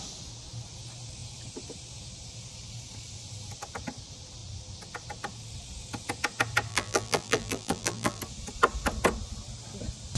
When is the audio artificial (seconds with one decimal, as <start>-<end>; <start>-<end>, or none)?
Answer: 6.7-8.2